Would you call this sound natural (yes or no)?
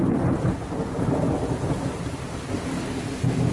yes